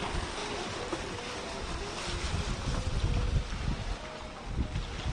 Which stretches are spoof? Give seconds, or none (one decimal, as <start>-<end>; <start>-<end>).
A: none